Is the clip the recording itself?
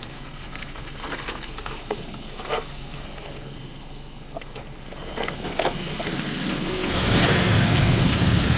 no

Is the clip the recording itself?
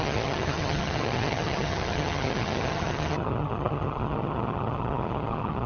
no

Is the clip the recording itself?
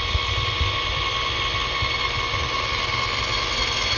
yes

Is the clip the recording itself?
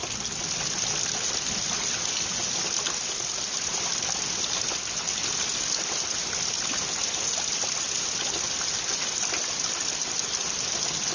yes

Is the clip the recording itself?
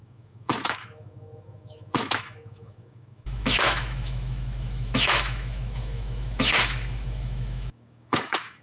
no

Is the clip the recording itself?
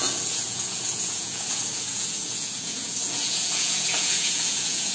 no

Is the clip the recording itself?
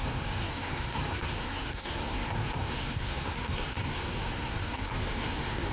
no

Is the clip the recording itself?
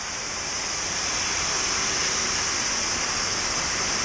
yes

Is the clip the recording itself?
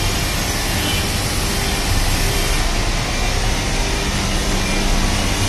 yes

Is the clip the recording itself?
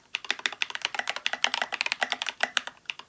yes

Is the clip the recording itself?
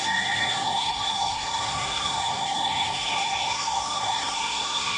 no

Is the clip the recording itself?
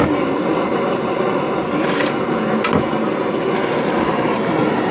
yes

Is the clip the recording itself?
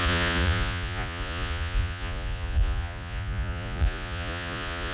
no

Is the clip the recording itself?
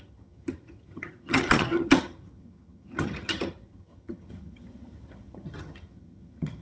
no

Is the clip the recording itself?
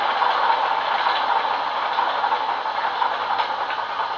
yes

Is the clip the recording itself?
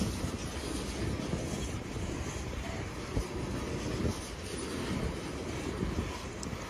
yes